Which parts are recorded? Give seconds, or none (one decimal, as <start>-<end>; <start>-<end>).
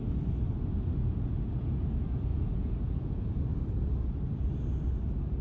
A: 0.0-1.0; 1.9-2.3; 3.6-5.4